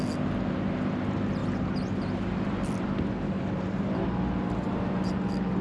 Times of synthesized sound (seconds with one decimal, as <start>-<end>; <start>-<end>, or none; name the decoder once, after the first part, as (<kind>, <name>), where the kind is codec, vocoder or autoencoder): none

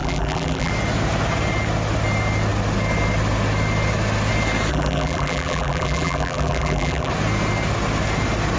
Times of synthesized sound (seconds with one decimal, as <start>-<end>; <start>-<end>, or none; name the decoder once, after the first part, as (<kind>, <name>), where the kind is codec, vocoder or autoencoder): 0.0-0.7 (vocoder, BigVGAN v2); 4.7-7.1

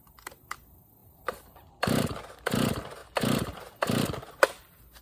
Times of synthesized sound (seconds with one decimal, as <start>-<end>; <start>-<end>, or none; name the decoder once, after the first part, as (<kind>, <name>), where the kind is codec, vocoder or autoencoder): 1.0-1.8 (vocoder, BigVGAN v2)

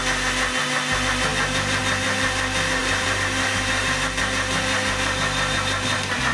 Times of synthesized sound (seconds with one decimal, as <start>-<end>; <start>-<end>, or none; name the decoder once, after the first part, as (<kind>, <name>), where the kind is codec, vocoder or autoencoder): 1.3-1.8 (vocoder, BigVGAN v2); 2.8-3.7

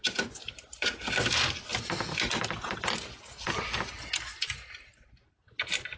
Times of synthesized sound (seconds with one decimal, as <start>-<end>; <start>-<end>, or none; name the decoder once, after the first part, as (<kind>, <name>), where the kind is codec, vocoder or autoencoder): 0.0-1.0 (vocoder, BigVGAN v2)

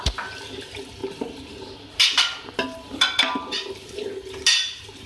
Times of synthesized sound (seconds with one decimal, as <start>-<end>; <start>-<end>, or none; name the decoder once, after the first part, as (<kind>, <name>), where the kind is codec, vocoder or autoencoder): none